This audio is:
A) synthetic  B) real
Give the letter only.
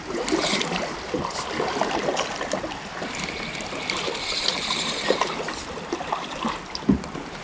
B